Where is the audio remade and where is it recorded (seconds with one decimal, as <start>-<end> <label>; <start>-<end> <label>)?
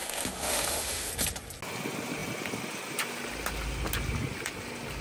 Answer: 0.0-1.1 remade; 1.1-5.0 recorded